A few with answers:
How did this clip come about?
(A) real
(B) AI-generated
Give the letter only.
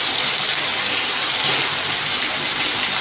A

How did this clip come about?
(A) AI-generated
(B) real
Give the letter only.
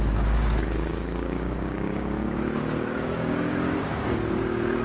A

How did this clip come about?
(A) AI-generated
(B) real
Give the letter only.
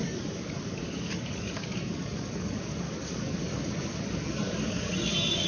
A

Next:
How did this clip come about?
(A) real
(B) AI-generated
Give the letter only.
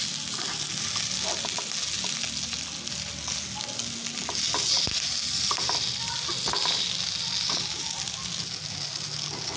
A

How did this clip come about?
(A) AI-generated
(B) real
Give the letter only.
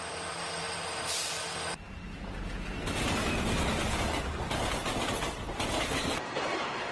B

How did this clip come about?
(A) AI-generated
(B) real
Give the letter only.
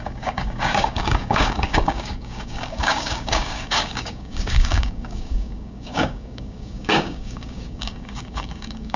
A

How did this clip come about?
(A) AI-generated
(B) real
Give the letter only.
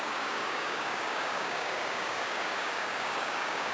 A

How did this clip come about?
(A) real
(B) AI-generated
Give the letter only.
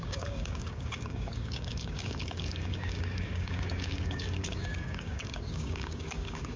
B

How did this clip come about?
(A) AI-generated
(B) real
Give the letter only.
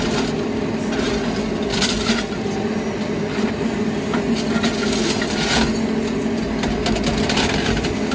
B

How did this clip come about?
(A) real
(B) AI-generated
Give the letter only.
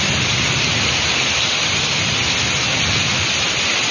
A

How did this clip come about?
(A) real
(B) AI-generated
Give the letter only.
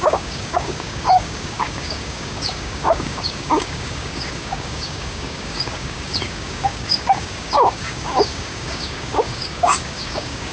B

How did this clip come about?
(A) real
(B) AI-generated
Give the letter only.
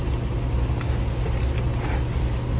A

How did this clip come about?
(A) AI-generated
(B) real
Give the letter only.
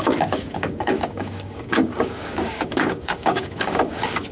A